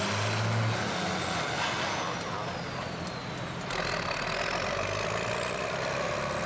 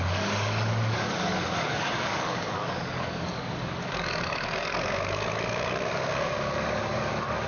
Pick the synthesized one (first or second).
second